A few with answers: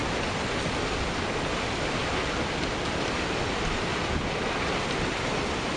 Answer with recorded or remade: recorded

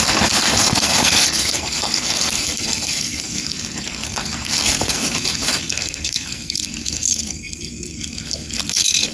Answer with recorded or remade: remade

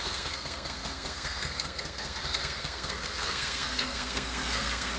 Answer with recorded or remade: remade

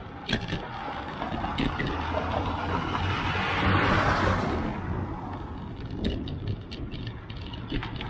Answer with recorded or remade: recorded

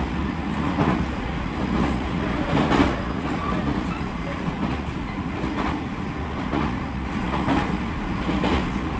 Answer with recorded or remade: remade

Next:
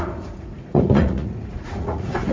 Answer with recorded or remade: remade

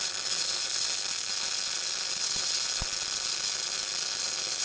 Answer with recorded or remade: recorded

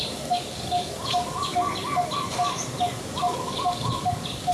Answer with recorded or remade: remade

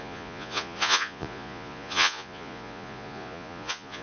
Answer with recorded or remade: remade